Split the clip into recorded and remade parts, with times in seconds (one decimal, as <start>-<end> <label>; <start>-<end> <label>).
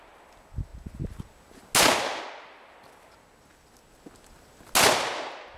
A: 0.0-5.6 recorded